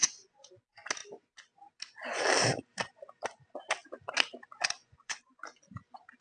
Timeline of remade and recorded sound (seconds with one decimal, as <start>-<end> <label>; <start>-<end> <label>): 0.0-0.5 remade; 0.5-4.8 recorded; 4.8-5.6 remade; 5.6-6.2 recorded